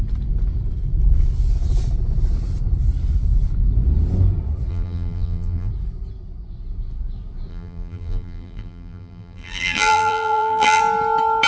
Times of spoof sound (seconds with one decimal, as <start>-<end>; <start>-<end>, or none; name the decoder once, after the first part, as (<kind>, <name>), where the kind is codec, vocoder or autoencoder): 4.7-5.7 (vocoder, BigVGAN v2); 7.5-10.8